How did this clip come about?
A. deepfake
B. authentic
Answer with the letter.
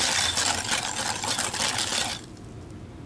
B